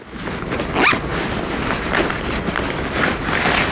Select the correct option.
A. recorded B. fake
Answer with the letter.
A